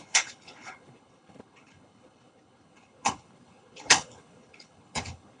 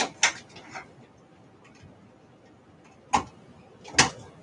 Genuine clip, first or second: second